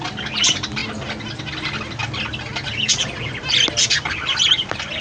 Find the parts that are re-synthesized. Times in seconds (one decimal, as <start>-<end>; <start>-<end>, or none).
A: none